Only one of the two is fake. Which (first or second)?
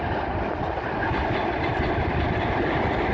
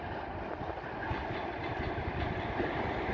first